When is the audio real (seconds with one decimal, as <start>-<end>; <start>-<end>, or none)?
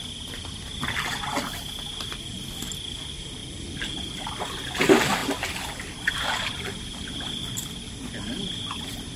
0.0-3.4; 4.3-9.2